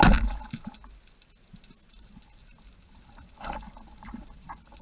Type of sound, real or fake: real